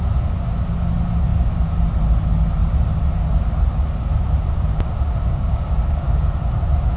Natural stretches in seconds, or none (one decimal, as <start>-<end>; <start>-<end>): 0.0-5.3; 6.3-7.0